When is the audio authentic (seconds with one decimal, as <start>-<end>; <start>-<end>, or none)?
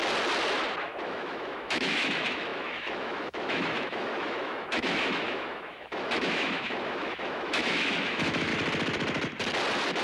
0.0-0.8; 8.5-10.0